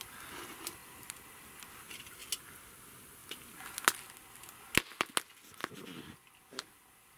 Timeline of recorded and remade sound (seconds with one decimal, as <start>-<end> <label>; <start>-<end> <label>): 0.0-0.8 remade; 0.8-1.8 recorded; 1.8-2.2 remade; 2.2-2.8 recorded; 2.8-3.2 remade; 3.2-6.4 recorded; 6.4-7.2 remade